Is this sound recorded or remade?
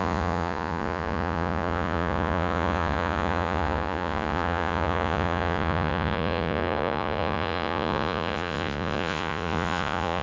remade